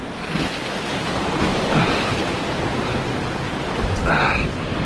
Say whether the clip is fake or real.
real